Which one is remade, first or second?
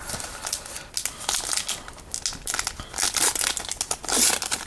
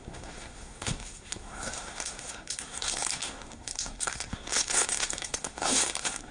second